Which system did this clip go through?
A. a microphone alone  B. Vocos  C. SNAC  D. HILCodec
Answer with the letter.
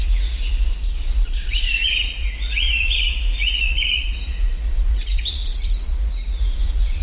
B